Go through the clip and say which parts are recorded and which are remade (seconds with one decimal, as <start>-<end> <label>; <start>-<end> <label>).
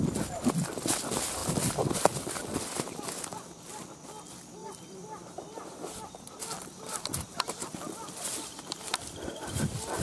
0.0-1.4 recorded; 1.4-2.3 remade; 2.3-4.6 recorded; 4.6-8.3 remade; 8.3-10.0 recorded